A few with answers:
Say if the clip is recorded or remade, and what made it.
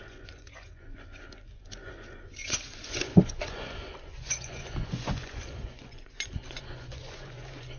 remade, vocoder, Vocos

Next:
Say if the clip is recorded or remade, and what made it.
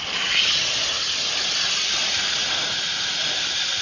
recorded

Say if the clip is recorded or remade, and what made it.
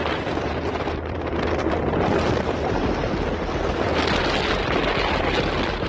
recorded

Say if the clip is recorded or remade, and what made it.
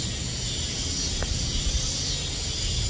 recorded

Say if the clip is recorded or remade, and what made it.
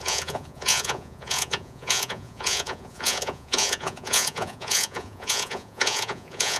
remade, vocoder, Vocos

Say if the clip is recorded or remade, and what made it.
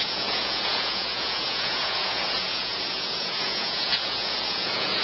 remade, vocoder, Vocos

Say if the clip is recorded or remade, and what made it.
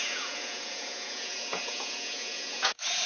remade, vocoder, Vocos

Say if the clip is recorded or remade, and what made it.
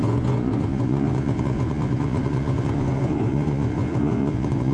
remade, vocoder, Vocos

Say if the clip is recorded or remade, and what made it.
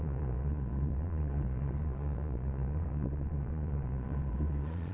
remade, vocoder, Vocos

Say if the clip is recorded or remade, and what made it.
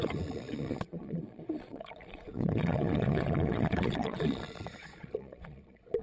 remade, vocoder, Vocos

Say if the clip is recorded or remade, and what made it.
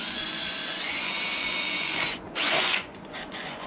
remade, vocoder, Vocos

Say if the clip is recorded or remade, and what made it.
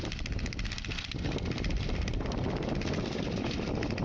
recorded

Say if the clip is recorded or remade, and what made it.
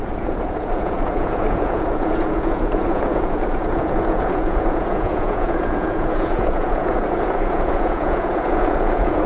remade, vocoder, Vocos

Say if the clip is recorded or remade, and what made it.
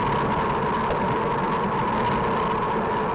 recorded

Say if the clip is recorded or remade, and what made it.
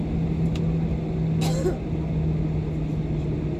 recorded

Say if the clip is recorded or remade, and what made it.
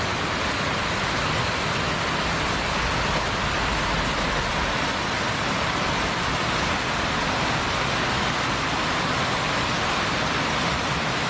recorded